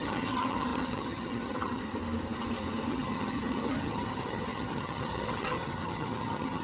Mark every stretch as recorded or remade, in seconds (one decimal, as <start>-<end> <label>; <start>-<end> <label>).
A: 0.0-1.8 remade; 1.8-2.9 recorded; 2.9-6.6 remade